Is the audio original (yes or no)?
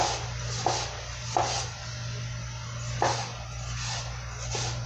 yes